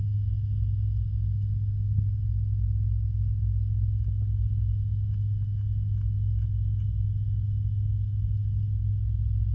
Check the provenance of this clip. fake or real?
real